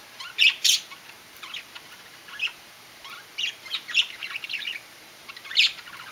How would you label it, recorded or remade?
remade